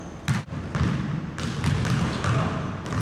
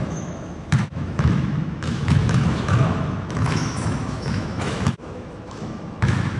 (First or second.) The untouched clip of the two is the first